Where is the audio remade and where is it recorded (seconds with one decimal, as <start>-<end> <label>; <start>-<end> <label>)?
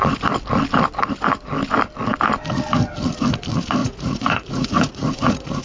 0.0-3.8 recorded; 3.8-5.6 remade